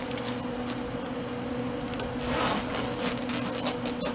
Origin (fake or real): real